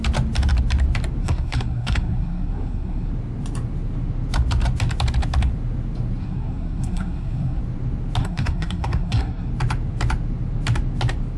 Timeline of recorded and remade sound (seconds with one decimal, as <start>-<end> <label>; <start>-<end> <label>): 0.0-1.2 recorded; 1.2-3.1 remade; 3.1-6.2 recorded; 6.2-7.6 remade; 7.6-8.2 recorded; 8.2-9.5 remade; 9.5-11.4 recorded